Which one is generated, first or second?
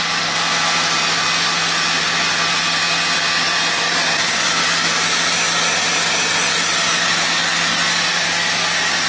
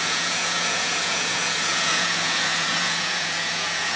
second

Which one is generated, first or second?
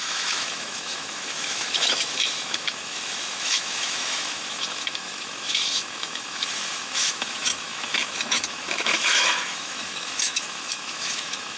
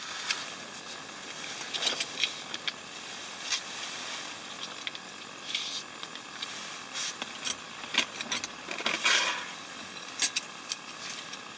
first